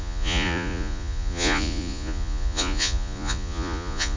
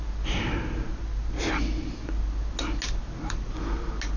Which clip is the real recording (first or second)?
second